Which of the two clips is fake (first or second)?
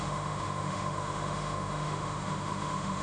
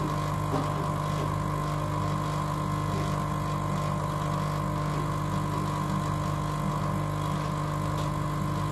first